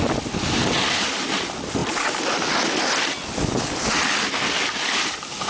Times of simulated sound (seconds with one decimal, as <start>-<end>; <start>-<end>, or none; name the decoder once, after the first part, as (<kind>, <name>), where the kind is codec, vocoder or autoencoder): none